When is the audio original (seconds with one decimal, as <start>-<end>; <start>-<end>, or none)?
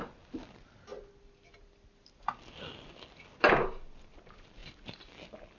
0.0-5.6